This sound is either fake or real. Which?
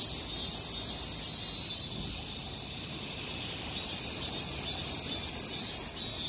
real